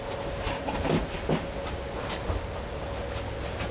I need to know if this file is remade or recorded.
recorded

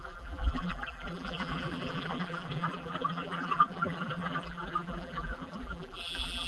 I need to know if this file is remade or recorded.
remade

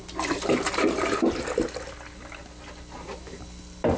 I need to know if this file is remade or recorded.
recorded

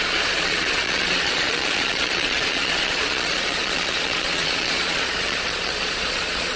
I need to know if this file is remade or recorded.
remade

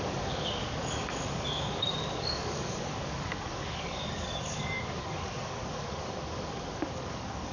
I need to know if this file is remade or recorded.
remade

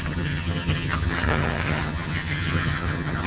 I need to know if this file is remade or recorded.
remade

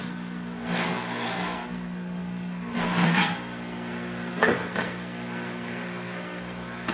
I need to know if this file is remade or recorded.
remade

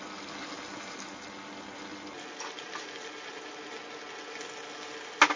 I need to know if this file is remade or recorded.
recorded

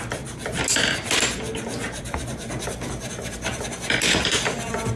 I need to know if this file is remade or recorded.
recorded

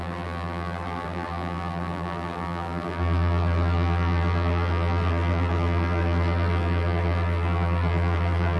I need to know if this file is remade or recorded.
remade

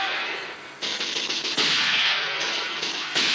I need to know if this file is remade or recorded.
remade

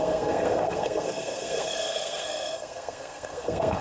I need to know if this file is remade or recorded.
remade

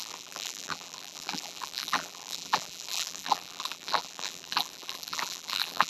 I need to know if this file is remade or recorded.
remade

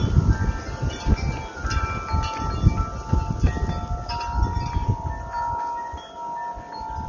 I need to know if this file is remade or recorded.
recorded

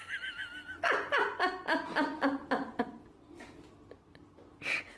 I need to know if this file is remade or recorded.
recorded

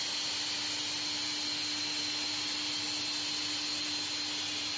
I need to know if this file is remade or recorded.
recorded